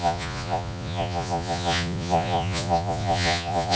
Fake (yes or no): yes